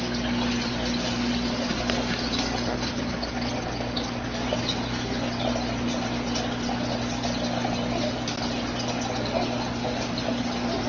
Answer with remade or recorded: recorded